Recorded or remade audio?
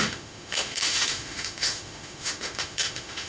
remade